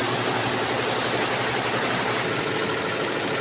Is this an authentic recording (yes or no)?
yes